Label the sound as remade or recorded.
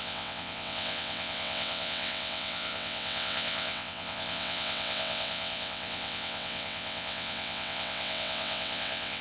remade